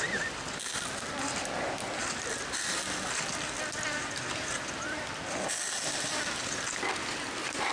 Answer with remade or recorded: recorded